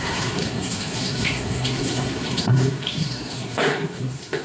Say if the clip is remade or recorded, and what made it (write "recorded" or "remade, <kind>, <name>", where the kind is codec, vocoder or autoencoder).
remade, codec, SNAC